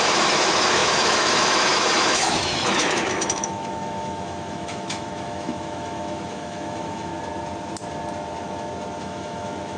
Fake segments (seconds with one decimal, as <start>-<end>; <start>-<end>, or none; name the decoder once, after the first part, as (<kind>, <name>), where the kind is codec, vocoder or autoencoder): 0.0-7.1 (autoencoder, DAC-VAE); 9.0-9.8

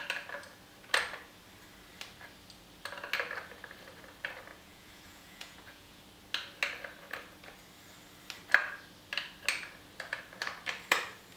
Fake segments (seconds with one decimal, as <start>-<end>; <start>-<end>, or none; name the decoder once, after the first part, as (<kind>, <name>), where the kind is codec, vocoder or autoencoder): 4.5-6.0 (vocoder, Vocos)